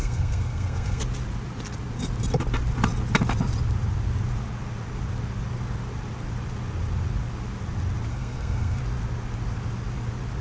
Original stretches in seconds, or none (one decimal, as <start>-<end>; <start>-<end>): 1.0-8.1; 8.8-10.4